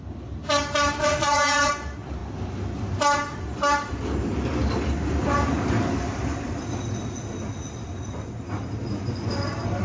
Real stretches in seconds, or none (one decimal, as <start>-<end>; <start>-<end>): 0.0-1.0; 1.7-9.8